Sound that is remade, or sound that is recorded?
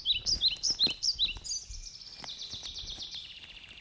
recorded